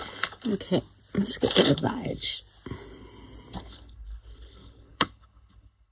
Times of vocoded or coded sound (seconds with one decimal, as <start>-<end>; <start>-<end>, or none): 0.0-0.5; 1.5-2.3; 3.6-5.9